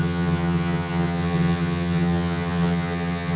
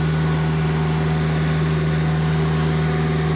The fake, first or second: first